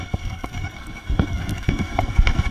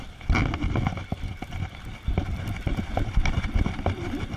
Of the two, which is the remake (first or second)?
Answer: first